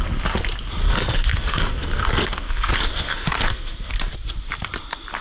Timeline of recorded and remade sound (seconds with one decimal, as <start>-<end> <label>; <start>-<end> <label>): 0.0-0.8 recorded; 0.8-3.9 remade; 3.9-5.2 recorded